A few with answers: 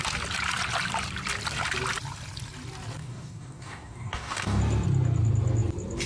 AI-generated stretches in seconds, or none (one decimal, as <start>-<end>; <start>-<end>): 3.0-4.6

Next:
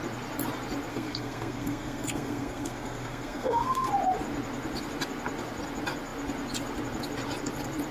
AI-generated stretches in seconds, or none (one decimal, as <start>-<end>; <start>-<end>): 0.9-3.9

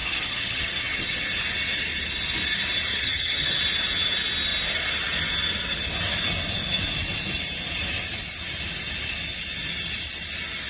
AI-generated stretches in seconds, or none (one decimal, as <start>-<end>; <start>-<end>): 0.0-1.1; 2.9-3.6

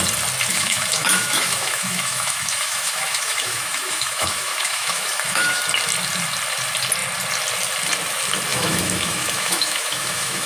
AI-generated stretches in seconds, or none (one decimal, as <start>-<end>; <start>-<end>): 0.5-5.6; 8.5-10.5

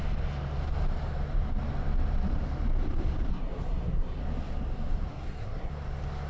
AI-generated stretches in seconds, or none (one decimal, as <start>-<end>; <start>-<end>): 3.3-4.2; 5.1-5.7